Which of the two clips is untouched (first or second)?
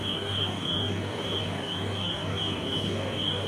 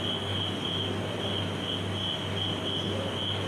second